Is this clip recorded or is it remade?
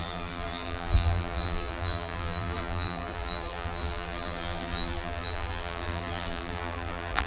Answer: remade